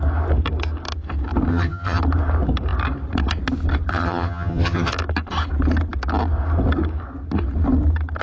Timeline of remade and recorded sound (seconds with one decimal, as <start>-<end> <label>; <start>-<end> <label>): 0.0-1.5 recorded; 1.5-2.0 remade; 2.0-3.9 recorded; 3.9-4.9 remade; 4.9-8.2 recorded